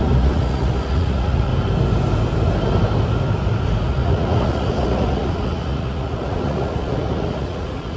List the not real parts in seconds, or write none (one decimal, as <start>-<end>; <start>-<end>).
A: 0.0-1.5; 3.9-8.0